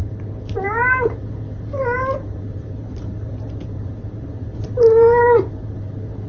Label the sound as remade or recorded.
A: remade